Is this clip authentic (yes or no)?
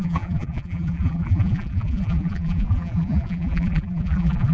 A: no